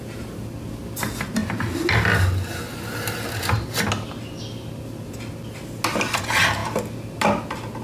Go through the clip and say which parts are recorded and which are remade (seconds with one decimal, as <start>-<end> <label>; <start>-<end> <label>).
0.0-7.8 recorded